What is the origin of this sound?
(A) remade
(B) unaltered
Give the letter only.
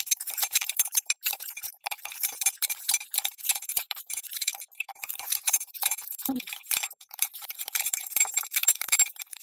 A